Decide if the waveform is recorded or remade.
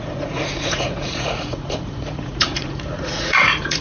remade